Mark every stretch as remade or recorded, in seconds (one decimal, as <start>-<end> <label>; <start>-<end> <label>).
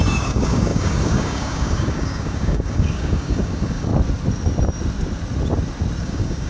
0.0-3.9 remade; 3.9-6.0 recorded; 6.0-6.5 remade